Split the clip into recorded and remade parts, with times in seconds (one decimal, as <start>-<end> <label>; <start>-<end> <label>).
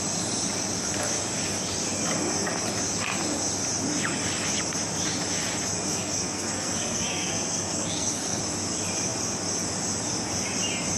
0.0-5.9 recorded; 5.9-8.4 remade; 8.4-11.0 recorded